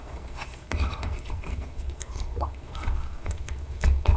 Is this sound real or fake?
fake